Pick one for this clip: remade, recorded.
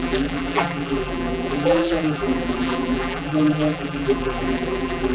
remade